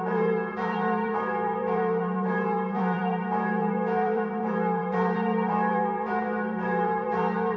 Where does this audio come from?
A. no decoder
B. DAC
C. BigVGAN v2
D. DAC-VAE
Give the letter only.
C